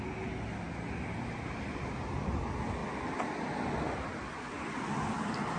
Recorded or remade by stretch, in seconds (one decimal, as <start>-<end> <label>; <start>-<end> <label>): 0.0-5.6 recorded